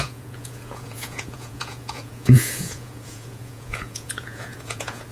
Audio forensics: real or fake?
fake